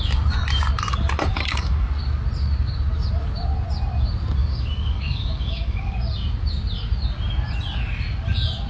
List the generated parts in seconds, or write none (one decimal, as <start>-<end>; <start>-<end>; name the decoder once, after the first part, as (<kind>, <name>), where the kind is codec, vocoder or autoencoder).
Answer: 1.3-1.9 (codec, DAC); 4.4-5.9